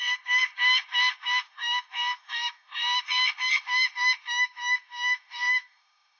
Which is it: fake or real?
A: fake